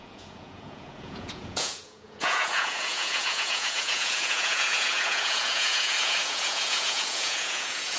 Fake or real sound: fake